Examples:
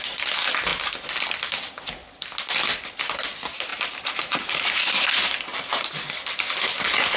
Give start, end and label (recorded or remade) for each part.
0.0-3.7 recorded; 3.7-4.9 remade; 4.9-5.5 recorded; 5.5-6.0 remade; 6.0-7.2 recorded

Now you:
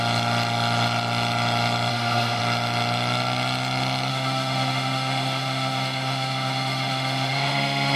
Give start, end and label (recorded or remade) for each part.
0.0-1.9 recorded; 1.9-2.4 remade; 2.4-4.1 recorded; 4.1-8.0 remade